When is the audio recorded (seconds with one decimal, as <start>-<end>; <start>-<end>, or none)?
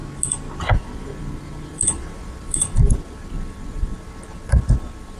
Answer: 0.0-0.6